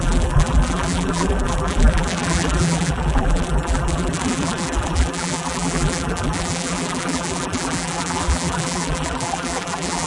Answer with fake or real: fake